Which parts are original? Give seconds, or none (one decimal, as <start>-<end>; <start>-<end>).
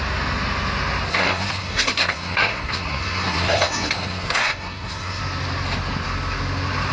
0.0-1.1; 5.2-6.9